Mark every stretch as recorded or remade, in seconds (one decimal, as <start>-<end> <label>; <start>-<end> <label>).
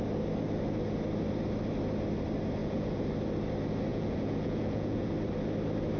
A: 0.0-2.6 recorded; 2.6-3.1 remade; 3.1-3.9 recorded; 3.9-5.1 remade; 5.1-6.0 recorded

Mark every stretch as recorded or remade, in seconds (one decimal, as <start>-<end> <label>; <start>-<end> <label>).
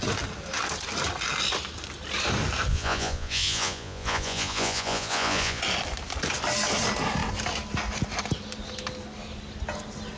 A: 0.0-2.7 recorded; 2.7-5.6 remade; 5.6-10.2 recorded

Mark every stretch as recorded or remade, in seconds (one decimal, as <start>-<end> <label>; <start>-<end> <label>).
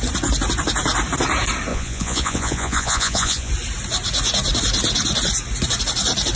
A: 0.0-1.7 recorded; 1.7-3.5 remade; 3.5-6.4 recorded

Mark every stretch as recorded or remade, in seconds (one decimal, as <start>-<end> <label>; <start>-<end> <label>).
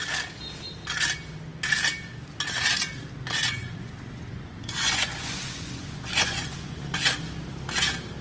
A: 0.0-3.6 recorded; 3.6-7.0 remade; 7.0-8.2 recorded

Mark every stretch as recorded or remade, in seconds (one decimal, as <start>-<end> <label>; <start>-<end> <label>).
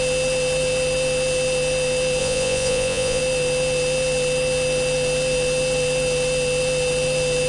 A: 0.0-2.2 recorded; 2.2-3.2 remade; 3.2-7.5 recorded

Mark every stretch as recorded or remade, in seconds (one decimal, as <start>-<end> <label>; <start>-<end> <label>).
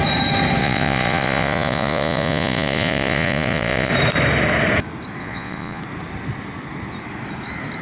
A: 0.0-0.6 recorded; 0.6-3.9 remade; 3.9-5.2 recorded; 5.2-5.8 remade; 5.8-7.8 recorded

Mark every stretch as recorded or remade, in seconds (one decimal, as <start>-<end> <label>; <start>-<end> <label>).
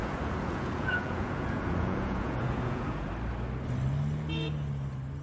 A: 0.0-3.1 remade; 3.1-5.2 recorded